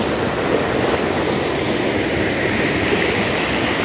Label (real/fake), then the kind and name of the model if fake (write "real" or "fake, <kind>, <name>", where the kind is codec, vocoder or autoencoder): real